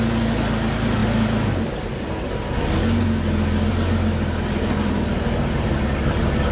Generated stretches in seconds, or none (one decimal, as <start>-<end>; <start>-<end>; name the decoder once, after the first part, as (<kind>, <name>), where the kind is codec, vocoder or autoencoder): none